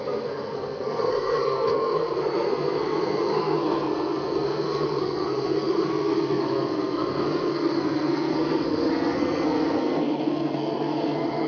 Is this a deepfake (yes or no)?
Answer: yes